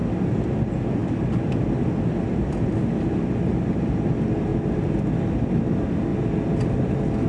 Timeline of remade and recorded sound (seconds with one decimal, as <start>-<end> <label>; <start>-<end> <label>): 0.0-7.3 recorded